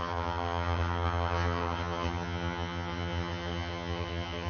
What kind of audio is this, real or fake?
fake